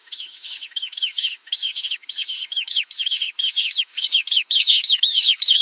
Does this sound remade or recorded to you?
remade